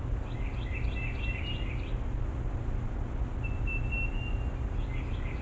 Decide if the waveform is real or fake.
real